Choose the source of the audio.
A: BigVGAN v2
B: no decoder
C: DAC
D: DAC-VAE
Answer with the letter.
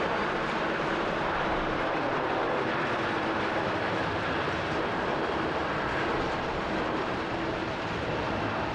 A